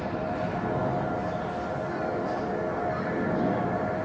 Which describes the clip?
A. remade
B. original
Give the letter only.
B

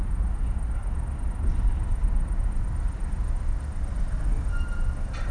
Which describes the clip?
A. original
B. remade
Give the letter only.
A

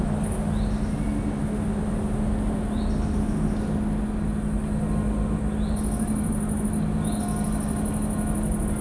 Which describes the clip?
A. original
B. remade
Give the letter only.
A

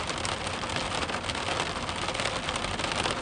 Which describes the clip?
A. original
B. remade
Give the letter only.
A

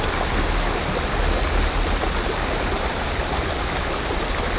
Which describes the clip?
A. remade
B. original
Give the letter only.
B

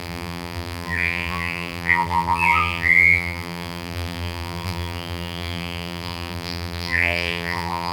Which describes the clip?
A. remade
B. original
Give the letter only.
A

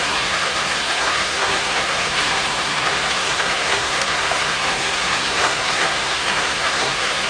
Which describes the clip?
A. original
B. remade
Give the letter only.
B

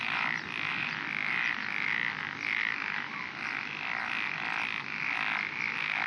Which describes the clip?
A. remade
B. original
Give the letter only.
B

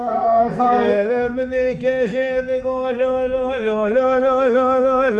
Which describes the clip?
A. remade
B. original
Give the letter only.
A